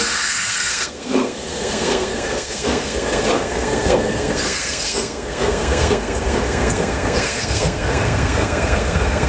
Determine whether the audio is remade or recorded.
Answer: remade